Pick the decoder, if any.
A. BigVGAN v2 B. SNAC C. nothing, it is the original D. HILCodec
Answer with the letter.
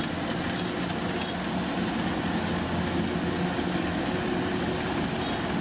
C